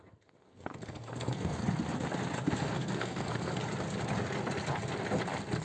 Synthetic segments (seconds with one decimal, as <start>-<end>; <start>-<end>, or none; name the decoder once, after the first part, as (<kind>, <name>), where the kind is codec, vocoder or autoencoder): 0.0-1.6 (codec, SNAC); 2.5-3.6